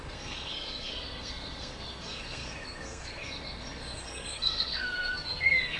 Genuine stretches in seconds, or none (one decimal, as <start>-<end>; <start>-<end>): none

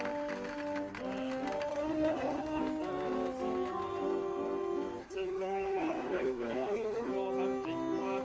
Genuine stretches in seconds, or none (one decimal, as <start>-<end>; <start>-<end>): 0.0-1.7; 2.6-5.0; 7.1-8.2